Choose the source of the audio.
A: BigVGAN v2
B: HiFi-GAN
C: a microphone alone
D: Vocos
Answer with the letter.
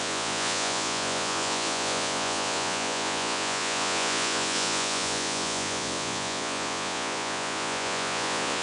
D